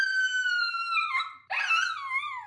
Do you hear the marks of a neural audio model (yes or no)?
no